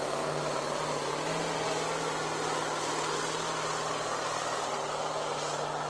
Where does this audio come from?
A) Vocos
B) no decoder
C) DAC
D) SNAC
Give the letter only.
B